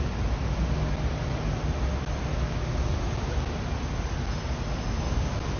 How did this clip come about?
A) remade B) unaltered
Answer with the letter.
B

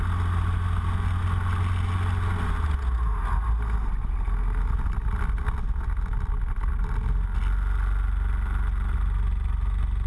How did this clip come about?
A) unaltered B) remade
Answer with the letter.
A